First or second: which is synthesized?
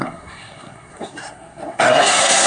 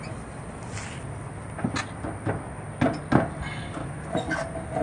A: first